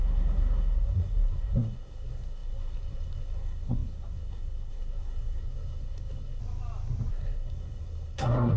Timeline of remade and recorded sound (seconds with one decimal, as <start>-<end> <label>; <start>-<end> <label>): 0.0-6.4 remade; 6.4-7.1 recorded; 7.1-8.6 remade